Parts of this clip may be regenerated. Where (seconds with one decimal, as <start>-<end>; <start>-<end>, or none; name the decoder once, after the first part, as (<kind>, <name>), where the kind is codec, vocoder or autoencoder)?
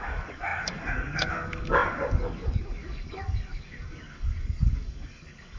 0.0-5.6 (codec, DAC)